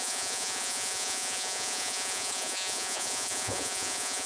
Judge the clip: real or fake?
fake